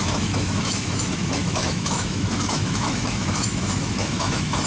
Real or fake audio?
fake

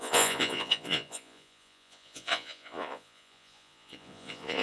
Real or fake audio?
fake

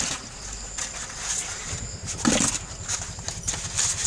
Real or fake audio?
real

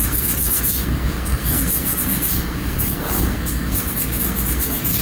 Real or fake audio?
fake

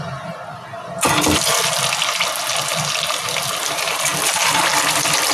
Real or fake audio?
real